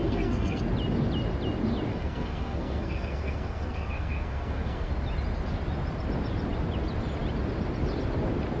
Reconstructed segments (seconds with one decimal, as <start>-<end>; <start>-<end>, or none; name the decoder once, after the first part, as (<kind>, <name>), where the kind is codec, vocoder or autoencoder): 0.0-0.6 (codec, SNAC); 1.9-4.9